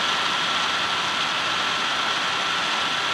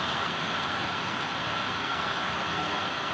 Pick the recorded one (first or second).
first